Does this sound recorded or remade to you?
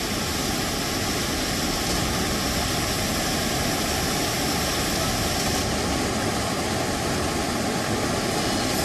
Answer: recorded